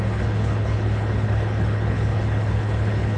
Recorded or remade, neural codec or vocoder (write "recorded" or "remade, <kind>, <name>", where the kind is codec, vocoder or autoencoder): remade, codec, HILCodec